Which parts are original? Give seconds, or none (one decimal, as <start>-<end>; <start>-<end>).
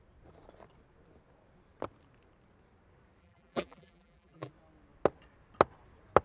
0.0-3.2; 4.5-6.2